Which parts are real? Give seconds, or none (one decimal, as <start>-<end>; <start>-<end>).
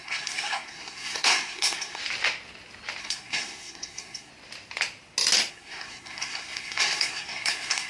2.0-3.0; 4.3-5.5